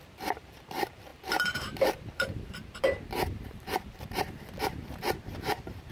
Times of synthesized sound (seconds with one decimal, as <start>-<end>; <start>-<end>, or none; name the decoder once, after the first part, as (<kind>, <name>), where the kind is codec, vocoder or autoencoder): 0.0-5.9 (vocoder, BigVGAN v2)